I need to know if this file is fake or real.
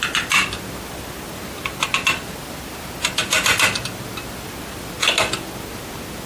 real